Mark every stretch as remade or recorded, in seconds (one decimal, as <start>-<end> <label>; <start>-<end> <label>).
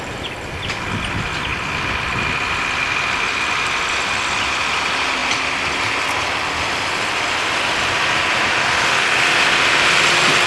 0.0-10.5 recorded